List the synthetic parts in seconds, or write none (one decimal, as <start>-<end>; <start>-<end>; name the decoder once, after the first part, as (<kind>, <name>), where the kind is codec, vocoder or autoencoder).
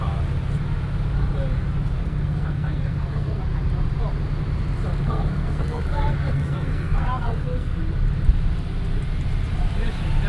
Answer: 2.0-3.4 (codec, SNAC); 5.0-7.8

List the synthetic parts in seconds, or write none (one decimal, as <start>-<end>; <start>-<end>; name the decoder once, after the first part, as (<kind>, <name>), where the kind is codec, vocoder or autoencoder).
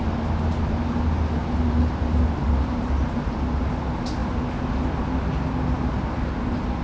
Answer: 1.4-3.8 (vocoder, BigVGAN v2)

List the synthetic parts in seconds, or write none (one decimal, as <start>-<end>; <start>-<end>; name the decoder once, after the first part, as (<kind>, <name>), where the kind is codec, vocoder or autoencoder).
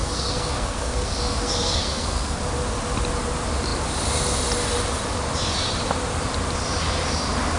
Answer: 0.0-2.4 (codec, SNAC)